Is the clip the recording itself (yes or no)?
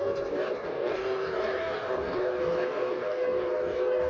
no